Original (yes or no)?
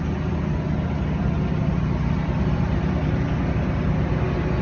yes